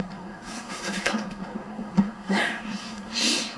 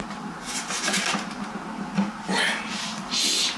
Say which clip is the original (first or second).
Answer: second